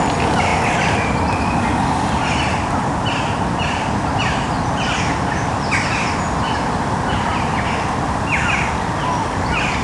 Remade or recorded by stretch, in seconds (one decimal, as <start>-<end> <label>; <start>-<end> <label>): 0.0-9.8 recorded